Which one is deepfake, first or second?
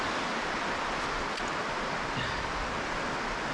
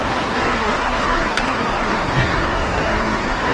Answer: second